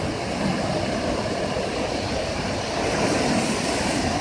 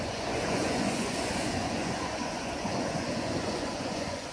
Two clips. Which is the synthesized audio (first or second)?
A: second